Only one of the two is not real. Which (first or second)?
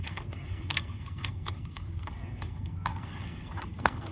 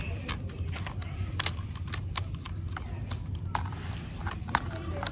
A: first